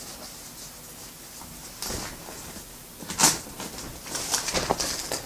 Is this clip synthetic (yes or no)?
no